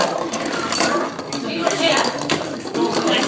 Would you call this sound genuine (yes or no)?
no